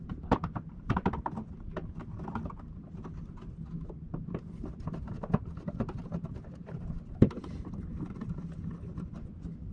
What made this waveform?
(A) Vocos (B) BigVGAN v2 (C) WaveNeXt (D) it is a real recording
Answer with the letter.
D